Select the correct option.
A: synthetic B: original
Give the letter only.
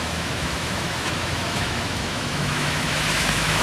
A